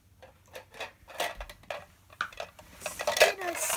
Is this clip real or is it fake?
real